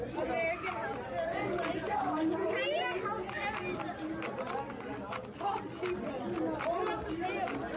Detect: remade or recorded recorded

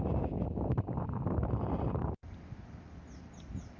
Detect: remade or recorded recorded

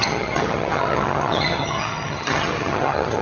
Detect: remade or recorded remade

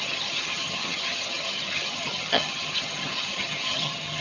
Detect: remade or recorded remade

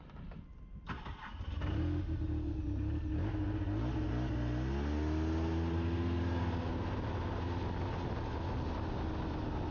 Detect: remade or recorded recorded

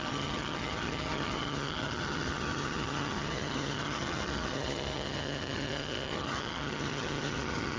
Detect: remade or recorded remade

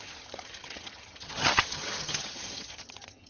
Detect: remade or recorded remade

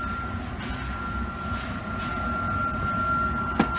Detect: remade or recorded recorded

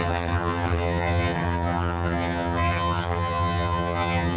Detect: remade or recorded remade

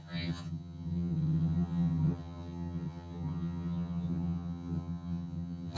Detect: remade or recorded remade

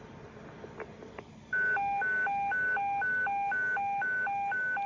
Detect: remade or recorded recorded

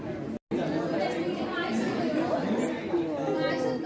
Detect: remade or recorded recorded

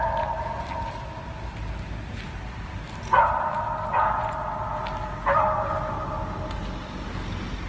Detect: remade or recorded recorded